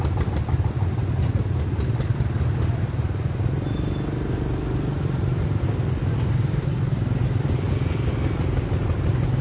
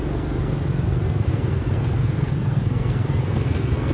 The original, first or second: first